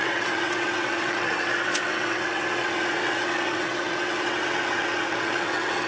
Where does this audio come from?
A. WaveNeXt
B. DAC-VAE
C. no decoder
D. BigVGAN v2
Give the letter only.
A